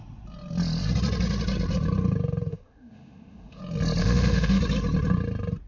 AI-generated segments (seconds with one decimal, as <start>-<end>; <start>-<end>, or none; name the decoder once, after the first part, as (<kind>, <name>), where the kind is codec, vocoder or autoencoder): 2.5-3.6 (autoencoder, DAC-VAE); 4.0-4.6